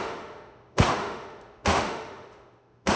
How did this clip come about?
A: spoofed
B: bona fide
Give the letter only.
A